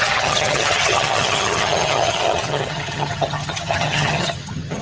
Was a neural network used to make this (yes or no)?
yes